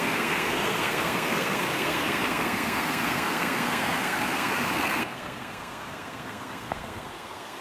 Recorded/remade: remade